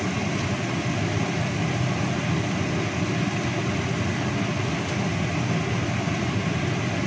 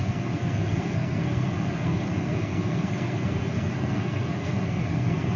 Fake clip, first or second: second